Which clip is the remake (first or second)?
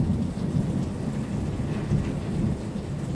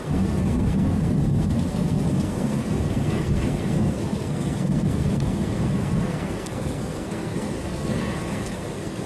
second